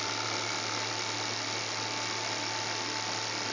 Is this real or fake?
real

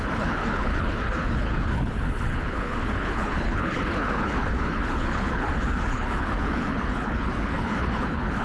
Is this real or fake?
fake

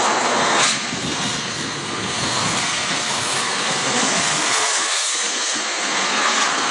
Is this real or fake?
fake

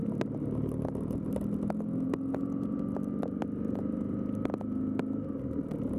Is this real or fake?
real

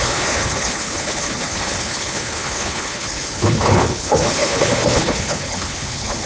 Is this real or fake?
fake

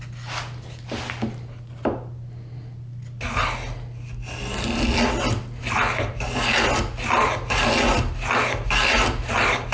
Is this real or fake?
real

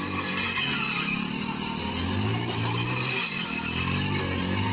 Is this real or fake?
real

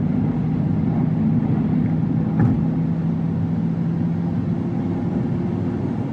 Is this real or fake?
real